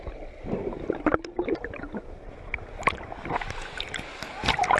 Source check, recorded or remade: recorded